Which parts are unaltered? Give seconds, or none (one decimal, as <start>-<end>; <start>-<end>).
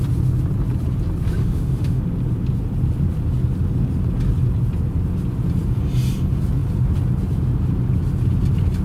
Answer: 0.0-1.4; 2.0-8.8